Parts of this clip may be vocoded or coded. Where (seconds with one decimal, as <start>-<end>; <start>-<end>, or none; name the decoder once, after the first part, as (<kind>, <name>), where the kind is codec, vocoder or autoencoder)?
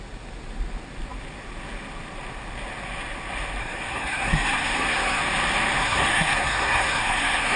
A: 3.6-5.2 (codec, SNAC); 5.8-7.6